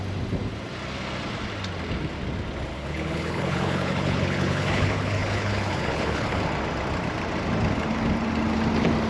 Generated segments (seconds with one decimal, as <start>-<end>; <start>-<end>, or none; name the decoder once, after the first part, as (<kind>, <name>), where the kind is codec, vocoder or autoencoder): 2.7-6.4 (codec, HILCodec)